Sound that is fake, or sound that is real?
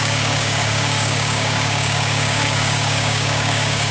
fake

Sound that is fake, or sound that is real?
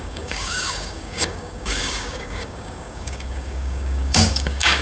fake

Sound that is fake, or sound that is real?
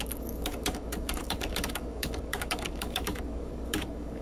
fake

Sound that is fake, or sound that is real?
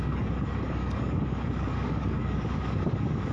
fake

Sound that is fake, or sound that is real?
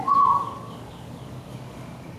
fake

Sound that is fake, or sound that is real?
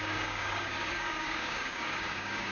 fake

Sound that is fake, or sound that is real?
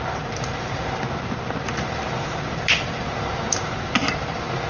real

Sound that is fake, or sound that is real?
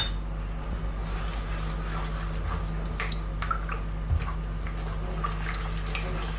real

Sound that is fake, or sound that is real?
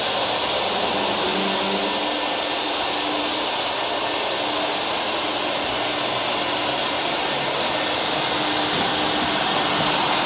real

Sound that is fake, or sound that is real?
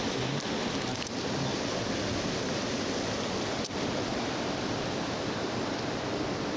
real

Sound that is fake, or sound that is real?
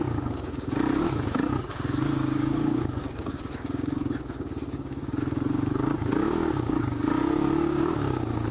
fake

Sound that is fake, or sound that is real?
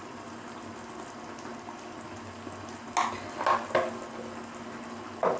real